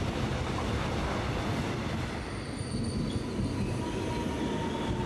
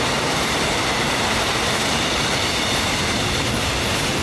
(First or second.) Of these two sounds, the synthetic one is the second